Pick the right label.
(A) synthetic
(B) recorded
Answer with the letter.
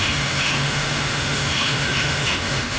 A